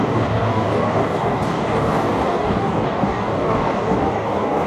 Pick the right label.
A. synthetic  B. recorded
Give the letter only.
A